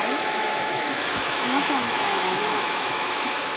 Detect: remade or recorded remade